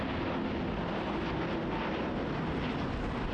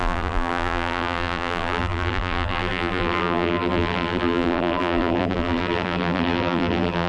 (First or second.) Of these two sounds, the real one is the first